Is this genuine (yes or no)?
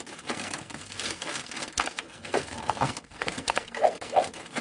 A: no